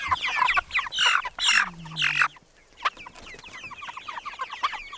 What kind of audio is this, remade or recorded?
recorded